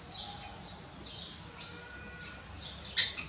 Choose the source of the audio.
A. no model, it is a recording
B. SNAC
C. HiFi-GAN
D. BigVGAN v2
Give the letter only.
A